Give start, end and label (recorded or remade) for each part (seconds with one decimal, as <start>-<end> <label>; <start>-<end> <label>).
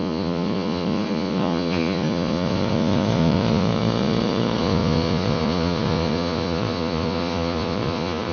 0.0-8.3 remade